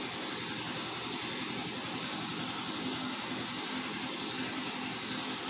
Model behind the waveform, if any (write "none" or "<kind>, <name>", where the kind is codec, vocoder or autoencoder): none